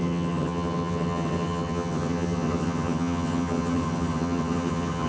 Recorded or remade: remade